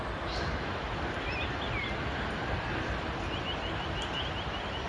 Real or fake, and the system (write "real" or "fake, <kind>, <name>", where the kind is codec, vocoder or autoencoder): real